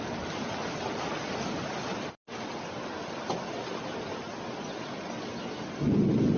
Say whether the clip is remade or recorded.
recorded